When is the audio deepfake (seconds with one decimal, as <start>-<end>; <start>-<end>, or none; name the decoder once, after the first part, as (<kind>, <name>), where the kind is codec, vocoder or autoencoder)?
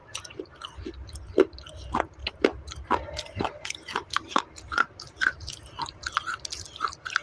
0.0-0.5 (vocoder, BigVGAN v2); 2.2-4.1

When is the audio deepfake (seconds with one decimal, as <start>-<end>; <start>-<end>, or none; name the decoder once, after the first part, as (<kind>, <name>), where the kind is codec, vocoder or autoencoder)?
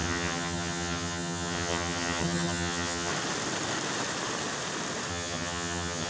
0.0-3.1 (vocoder, HiFi-GAN); 5.1-6.1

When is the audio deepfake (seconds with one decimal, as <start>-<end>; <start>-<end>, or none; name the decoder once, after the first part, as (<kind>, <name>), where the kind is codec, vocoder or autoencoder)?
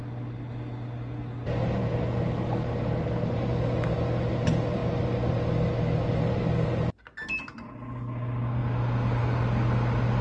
none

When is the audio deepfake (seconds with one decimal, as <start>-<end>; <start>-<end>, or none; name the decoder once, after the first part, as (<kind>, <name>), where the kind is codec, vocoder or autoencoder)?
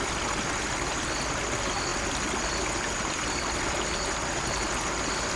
none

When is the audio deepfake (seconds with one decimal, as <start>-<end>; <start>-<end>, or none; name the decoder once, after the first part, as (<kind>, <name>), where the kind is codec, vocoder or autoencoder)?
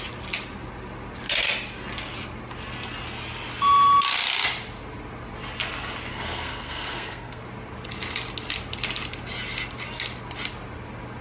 6.1-7.4 (codec, SNAC)